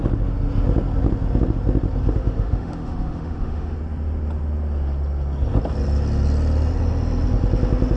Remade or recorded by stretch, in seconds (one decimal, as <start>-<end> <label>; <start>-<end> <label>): 0.0-2.0 recorded; 2.0-3.8 remade; 3.8-8.0 recorded